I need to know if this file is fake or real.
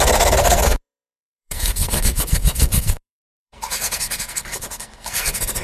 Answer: fake